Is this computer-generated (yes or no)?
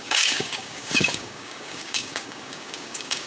yes